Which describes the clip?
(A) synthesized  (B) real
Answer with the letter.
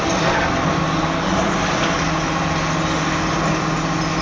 B